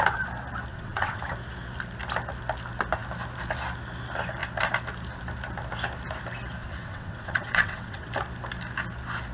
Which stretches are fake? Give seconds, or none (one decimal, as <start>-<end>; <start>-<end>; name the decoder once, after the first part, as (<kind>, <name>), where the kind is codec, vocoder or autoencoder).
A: 0.7-1.2 (vocoder, WaveNeXt); 6.6-8.1